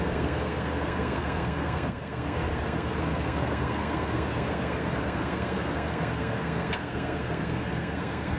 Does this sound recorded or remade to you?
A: remade